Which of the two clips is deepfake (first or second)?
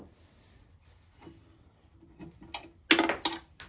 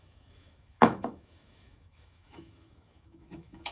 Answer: second